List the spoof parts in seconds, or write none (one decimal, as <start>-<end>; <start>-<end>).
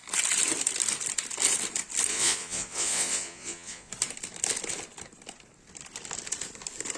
2.1-3.9